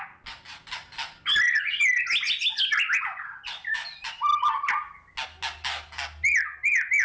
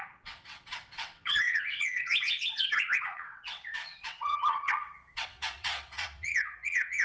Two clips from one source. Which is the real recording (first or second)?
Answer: first